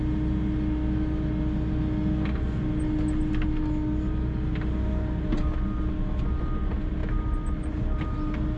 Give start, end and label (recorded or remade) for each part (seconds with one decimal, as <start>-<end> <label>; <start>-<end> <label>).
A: 0.0-8.6 recorded